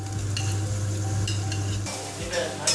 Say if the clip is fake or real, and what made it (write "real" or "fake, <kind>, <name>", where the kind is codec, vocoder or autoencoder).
real